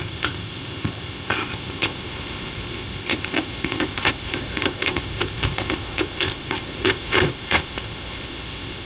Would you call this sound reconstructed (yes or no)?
yes